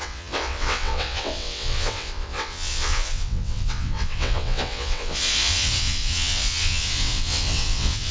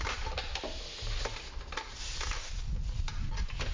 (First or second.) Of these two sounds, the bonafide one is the second